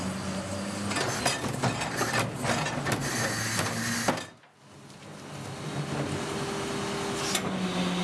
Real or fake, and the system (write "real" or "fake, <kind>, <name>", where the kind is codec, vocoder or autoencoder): real